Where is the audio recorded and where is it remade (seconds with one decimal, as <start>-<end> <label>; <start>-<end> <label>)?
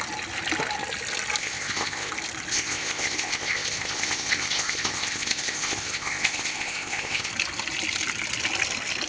0.0-1.4 recorded; 1.4-2.1 remade; 2.1-2.5 recorded; 2.5-7.3 remade; 7.3-9.1 recorded